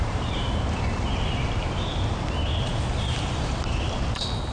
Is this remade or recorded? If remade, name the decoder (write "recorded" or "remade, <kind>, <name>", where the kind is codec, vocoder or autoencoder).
remade, vocoder, BigVGAN v2